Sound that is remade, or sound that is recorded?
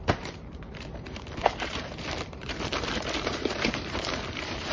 remade